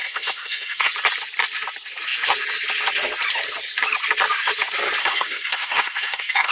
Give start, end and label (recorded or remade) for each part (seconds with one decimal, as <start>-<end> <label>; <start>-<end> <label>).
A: 0.0-0.9 remade; 0.9-5.0 recorded; 5.0-6.5 remade